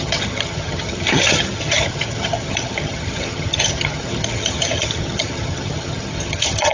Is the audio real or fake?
fake